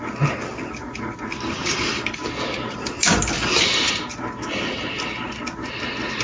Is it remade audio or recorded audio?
recorded